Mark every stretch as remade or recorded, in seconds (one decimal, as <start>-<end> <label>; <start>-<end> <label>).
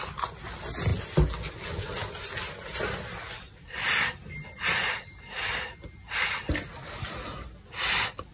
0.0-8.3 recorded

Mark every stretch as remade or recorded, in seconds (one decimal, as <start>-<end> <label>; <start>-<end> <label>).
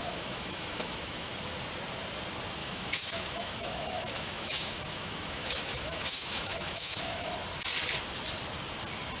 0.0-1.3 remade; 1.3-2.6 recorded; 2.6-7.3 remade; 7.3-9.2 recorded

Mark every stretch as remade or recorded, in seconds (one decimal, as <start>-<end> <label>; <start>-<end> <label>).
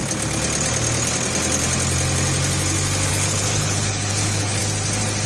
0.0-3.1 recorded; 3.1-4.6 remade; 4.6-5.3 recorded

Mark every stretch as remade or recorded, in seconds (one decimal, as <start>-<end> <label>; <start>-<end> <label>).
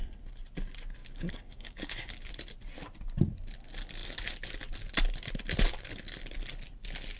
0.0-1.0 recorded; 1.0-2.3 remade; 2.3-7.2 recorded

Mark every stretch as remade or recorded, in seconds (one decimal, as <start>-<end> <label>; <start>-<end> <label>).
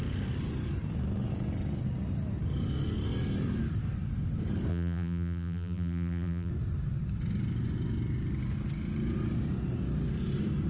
0.0-4.7 recorded; 4.7-6.5 remade; 6.5-10.7 recorded